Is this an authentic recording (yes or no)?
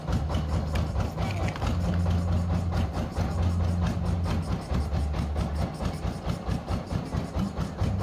yes